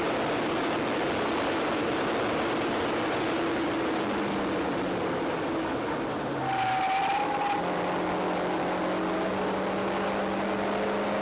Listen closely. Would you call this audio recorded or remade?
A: recorded